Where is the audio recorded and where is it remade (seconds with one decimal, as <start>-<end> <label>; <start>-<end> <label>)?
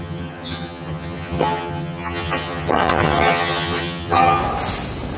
0.0-4.4 remade; 4.4-5.2 recorded